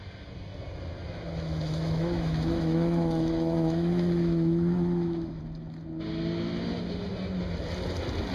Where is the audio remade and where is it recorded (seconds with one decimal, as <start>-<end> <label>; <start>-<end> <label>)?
0.0-1.0 recorded; 1.0-5.4 remade; 5.4-8.3 recorded